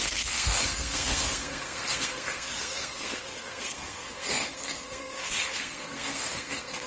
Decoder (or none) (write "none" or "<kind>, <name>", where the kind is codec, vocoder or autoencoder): codec, SNAC